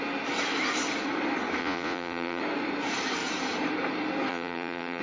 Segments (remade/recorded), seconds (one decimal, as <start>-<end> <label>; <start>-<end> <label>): 0.0-1.6 recorded; 1.6-2.4 remade; 2.4-4.3 recorded; 4.3-5.0 remade